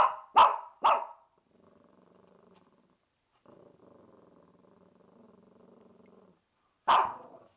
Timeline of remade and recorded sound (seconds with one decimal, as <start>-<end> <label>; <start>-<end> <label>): 0.0-0.5 recorded; 0.5-3.6 remade; 3.6-5.9 recorded; 5.9-7.6 remade